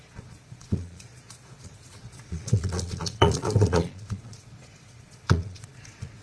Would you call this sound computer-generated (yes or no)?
yes